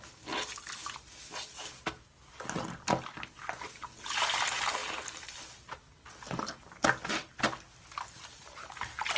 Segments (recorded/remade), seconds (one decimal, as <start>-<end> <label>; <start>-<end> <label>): 0.0-9.2 recorded